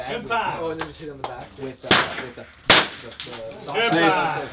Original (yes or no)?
yes